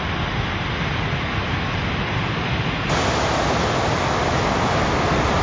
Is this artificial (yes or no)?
no